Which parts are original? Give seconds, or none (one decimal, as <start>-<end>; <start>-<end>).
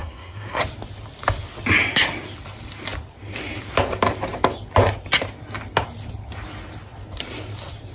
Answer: 0.6-7.9